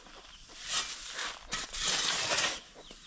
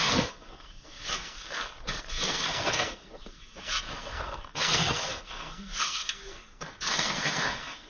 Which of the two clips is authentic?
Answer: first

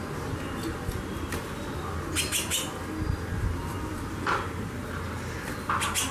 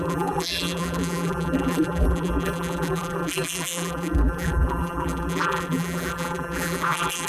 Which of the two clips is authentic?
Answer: first